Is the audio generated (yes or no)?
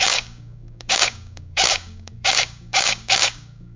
yes